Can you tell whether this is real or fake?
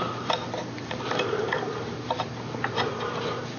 fake